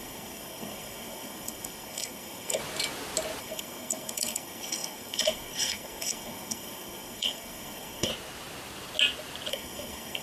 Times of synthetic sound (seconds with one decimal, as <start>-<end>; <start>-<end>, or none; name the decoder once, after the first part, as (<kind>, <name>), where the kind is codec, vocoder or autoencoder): 0.0-2.6 (codec, SNAC); 3.4-8.1; 9.5-10.2